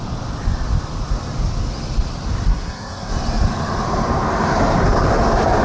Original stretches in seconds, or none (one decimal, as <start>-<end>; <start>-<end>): 0.0-2.5; 3.1-5.6